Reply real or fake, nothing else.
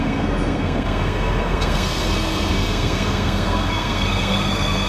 fake